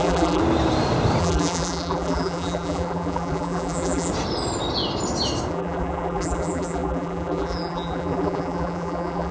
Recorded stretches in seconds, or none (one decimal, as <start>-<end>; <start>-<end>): 0.4-1.2; 4.1-5.5